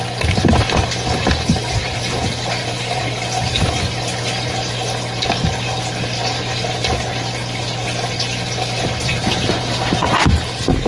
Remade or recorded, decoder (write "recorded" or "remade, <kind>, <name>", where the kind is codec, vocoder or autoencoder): recorded